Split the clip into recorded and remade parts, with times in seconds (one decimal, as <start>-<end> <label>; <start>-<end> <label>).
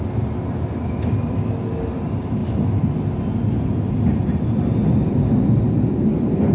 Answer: 0.0-6.5 recorded